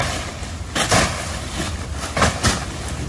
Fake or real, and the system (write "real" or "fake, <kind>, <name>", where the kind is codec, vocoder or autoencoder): real